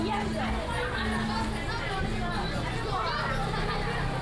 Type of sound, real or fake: real